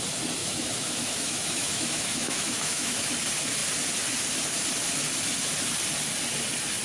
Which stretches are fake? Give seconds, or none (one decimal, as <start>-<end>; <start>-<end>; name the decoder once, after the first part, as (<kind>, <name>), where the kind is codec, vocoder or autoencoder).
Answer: 0.4-3.1 (autoencoder, DAC-VAE)